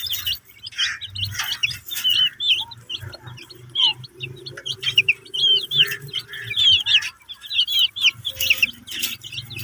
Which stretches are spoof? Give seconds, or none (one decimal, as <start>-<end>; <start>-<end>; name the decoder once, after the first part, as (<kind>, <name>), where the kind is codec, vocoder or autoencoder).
1.6-2.2 (vocoder, BigVGAN v2); 3.9-8.3